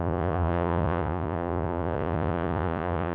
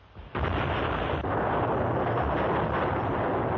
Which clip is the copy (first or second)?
first